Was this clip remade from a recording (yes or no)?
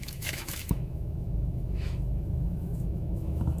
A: yes